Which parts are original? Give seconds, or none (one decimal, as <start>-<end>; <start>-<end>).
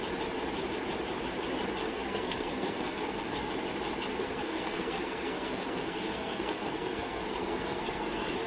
0.0-1.8; 3.5-4.1